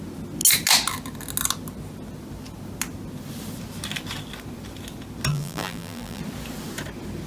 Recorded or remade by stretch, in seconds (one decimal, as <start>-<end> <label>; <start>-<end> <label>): 0.0-5.3 recorded; 5.3-6.2 remade; 6.2-7.3 recorded

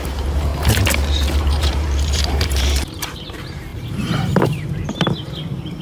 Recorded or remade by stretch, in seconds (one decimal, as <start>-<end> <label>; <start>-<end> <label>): 0.0-0.5 remade; 0.5-1.4 recorded; 1.4-5.8 remade